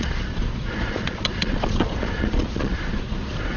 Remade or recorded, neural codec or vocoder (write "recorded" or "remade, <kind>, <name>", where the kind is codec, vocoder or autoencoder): remade, vocoder, Vocos